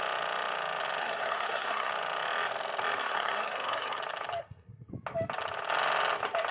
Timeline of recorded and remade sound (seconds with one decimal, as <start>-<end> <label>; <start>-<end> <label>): 0.0-1.0 recorded; 1.0-1.9 remade; 1.9-3.0 recorded; 3.0-4.0 remade; 4.0-4.4 recorded; 4.4-4.9 remade; 4.9-6.5 recorded